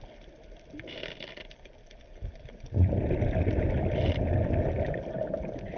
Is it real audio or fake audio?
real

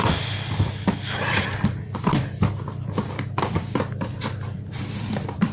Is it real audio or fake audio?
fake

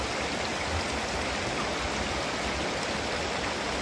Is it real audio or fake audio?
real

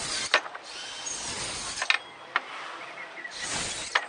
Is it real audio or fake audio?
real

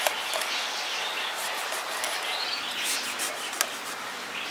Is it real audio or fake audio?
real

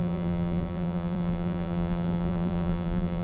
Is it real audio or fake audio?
fake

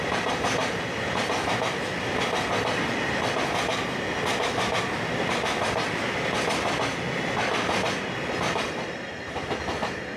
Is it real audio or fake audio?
real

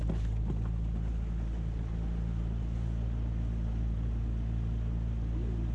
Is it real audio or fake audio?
real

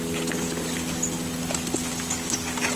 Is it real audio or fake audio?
real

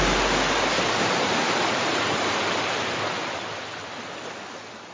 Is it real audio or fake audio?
real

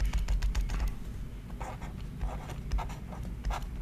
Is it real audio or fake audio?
real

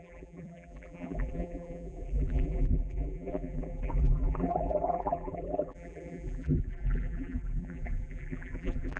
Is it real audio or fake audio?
fake